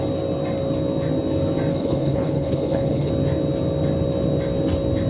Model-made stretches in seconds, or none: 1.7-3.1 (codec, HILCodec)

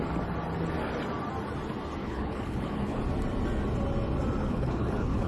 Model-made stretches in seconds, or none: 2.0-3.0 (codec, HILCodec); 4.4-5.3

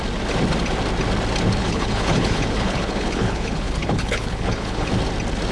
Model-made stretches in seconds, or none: 1.6-4.9 (codec, HILCodec)

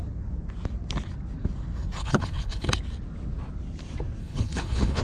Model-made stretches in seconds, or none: 2.0-2.7 (codec, HILCodec); 4.2-5.0

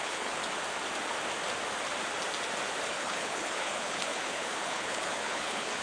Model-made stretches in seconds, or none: 0.0-0.4 (codec, HILCodec); 2.9-5.8

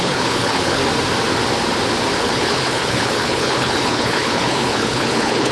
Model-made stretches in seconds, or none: 0.0-0.8 (codec, HILCodec); 2.2-5.5